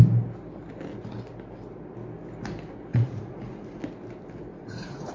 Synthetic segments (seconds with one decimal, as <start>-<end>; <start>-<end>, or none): 2.9-3.8; 4.5-5.1